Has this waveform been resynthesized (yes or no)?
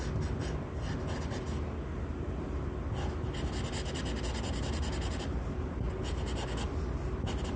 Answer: no